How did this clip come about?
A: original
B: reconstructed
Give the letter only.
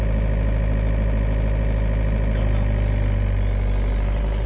A